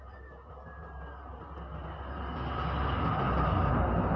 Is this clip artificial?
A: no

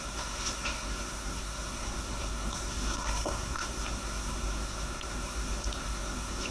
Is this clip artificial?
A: yes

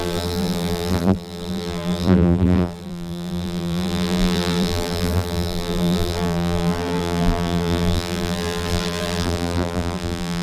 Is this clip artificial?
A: yes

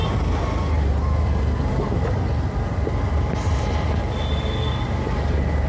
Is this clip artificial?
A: no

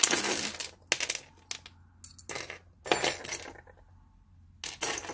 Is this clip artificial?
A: no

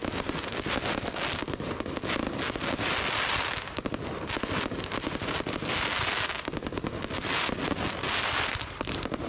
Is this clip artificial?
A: no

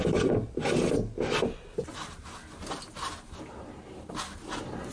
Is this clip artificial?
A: no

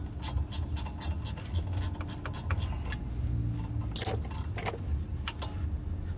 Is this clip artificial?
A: no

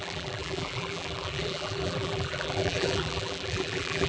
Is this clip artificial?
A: yes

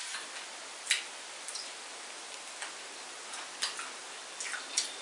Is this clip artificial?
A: no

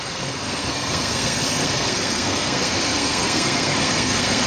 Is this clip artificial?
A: yes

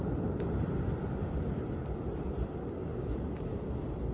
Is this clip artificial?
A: yes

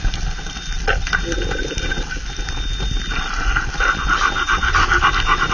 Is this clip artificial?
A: no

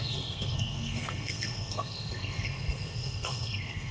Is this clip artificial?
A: yes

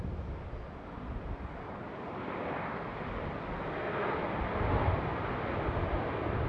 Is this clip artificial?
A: no